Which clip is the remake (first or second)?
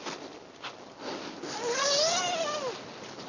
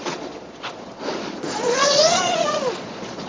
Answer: second